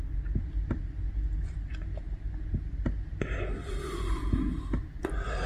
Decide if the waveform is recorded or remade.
recorded